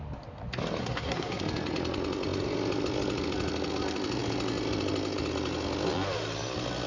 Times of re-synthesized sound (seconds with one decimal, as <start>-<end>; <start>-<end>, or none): 0.8-1.4